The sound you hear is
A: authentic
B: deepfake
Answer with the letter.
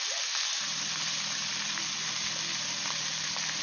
A